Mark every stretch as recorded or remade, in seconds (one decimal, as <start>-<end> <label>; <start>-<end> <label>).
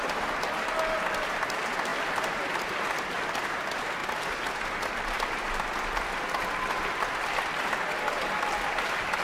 0.0-9.2 recorded